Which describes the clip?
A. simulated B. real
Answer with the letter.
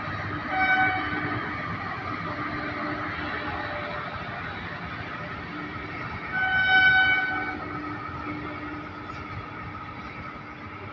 B